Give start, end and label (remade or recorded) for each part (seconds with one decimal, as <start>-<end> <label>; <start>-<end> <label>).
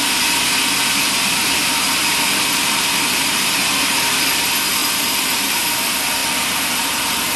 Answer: 0.0-1.4 recorded; 1.4-4.2 remade; 4.2-4.8 recorded; 4.8-5.7 remade; 5.7-7.4 recorded